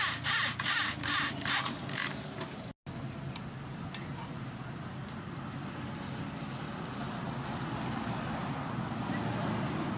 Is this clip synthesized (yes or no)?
no